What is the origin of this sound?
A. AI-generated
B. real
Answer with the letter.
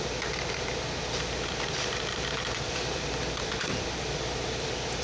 A